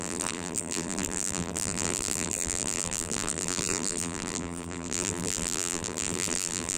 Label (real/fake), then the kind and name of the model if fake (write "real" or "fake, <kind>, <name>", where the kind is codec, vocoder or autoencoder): fake, vocoder, BigVGAN v2